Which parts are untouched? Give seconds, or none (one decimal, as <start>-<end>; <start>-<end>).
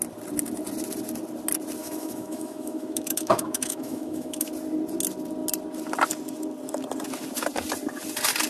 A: 0.0-1.8; 4.5-8.5